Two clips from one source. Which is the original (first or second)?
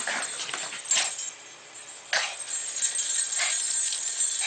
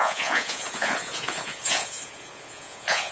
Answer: first